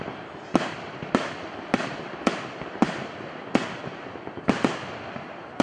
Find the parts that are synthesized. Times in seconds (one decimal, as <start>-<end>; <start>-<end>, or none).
0.0-3.4